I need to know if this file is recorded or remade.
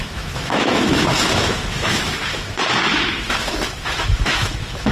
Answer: remade